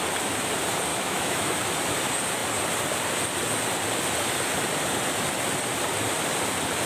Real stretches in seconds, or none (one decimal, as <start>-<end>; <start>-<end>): 0.0-0.9; 1.6-6.9